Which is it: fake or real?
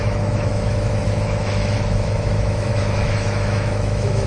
fake